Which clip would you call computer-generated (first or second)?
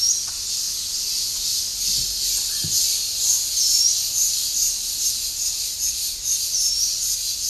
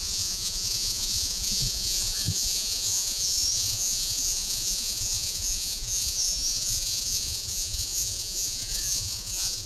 second